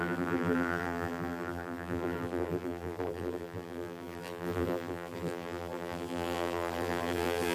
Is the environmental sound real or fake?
fake